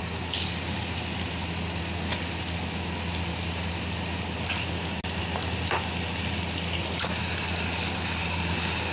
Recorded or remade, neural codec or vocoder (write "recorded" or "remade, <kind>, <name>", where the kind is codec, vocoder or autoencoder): recorded